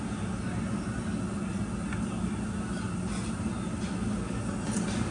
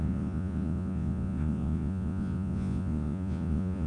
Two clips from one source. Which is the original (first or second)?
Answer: first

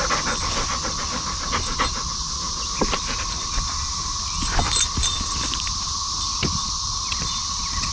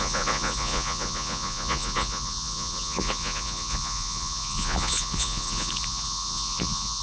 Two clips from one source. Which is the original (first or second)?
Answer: first